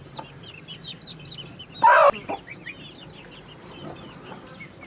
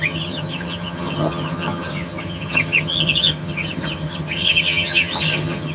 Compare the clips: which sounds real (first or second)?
first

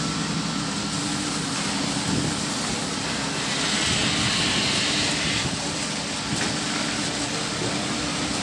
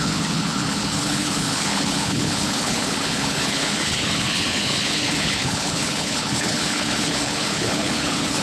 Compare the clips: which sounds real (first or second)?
first